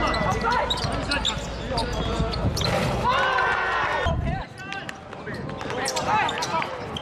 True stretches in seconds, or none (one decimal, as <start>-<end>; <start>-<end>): 0.0-1.8; 5.6-7.0